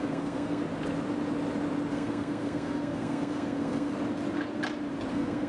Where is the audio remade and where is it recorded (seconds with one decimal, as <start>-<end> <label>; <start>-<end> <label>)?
0.0-0.6 remade; 0.6-1.9 recorded; 1.9-3.9 remade; 3.9-5.1 recorded; 5.1-5.5 remade